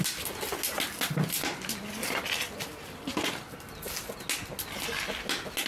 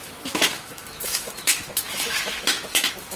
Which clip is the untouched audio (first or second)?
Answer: first